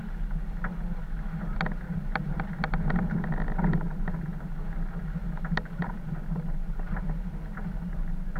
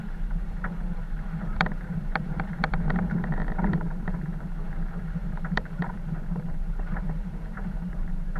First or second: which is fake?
second